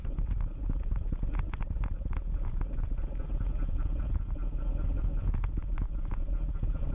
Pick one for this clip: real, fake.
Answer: fake